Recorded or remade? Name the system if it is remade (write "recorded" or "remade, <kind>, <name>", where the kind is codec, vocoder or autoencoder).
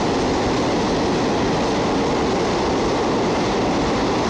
recorded